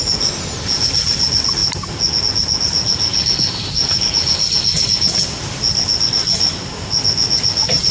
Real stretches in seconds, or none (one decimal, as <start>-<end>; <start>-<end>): 0.0-7.9